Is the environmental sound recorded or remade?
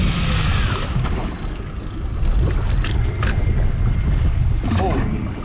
recorded